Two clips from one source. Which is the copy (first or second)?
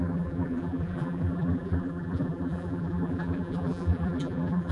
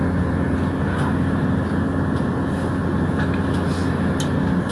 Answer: first